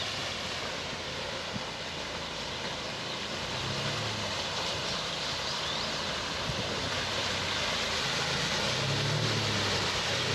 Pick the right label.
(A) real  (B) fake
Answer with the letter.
A